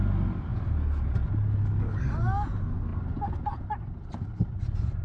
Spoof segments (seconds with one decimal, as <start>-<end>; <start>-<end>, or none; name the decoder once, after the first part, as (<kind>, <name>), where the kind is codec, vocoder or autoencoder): none